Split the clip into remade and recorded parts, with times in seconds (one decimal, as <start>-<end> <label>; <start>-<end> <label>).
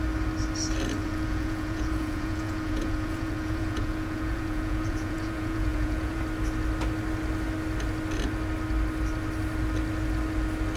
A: 0.0-1.0 recorded; 1.0-6.2 remade; 6.2-10.8 recorded